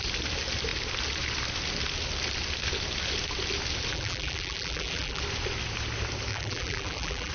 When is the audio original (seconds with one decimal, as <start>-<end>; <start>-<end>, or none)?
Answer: 0.0-3.9; 5.2-6.3